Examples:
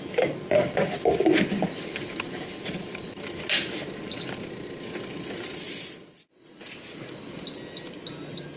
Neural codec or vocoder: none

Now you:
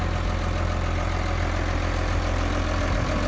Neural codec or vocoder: none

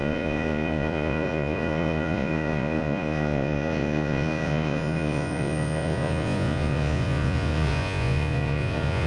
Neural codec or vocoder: vocoder, Vocos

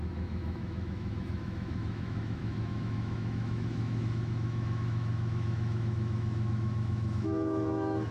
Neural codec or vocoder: autoencoder, DAC-VAE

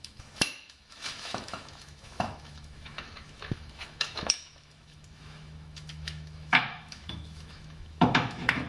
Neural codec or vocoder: autoencoder, DAC-VAE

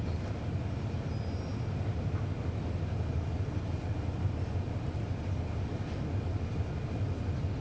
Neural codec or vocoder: none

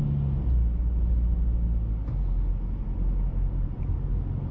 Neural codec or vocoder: none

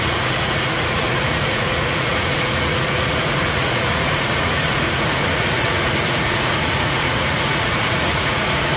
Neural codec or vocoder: vocoder, Vocos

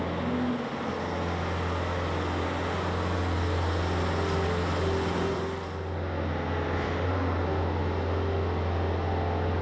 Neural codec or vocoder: none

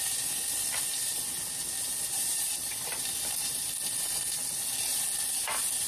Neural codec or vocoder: none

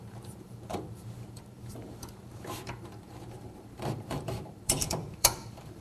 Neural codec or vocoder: vocoder, BigVGAN v2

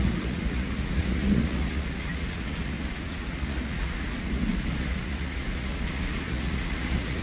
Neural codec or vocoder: vocoder, Vocos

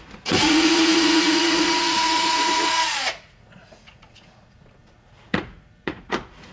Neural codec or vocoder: vocoder, Vocos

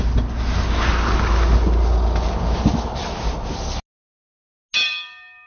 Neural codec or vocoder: none